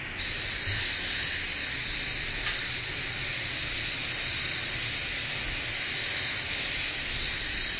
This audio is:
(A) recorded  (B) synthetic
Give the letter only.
A